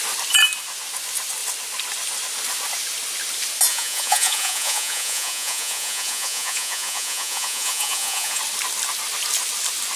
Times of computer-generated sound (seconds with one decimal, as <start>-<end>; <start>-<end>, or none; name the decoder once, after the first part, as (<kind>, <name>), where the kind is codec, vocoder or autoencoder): 3.7-8.4 (vocoder, Vocos)